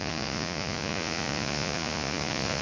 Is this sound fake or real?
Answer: fake